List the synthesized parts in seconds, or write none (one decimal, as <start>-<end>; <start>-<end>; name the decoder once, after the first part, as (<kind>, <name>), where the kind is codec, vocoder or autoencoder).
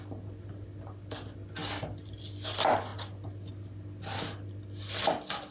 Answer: none